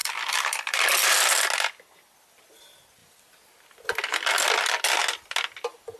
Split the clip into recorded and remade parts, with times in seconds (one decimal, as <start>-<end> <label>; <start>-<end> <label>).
0.0-0.8 remade; 0.8-6.0 recorded